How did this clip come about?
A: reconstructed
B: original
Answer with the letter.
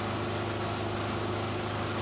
B